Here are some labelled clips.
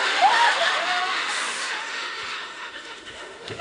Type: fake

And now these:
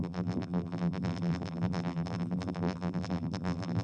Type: fake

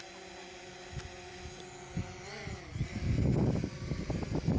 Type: real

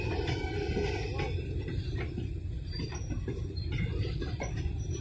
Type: real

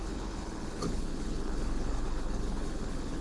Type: fake